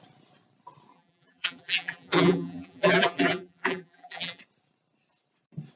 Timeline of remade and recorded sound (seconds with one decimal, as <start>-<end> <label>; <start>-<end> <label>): 0.0-0.9 recorded; 0.9-4.4 remade; 4.4-5.8 recorded